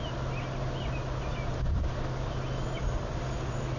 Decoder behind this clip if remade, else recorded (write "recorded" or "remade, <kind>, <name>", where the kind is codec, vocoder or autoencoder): recorded